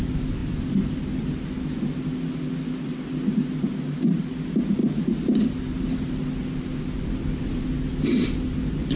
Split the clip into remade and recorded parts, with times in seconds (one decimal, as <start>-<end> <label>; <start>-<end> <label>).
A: 0.0-4.8 recorded; 4.8-6.1 remade; 6.1-9.0 recorded